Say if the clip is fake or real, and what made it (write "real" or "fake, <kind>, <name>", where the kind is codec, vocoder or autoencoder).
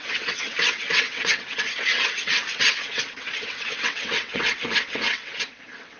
fake, vocoder, WaveNeXt